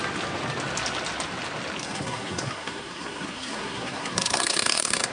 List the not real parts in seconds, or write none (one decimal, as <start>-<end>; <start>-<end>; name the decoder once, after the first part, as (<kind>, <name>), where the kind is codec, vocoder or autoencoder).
1.8-5.1 (codec, SNAC)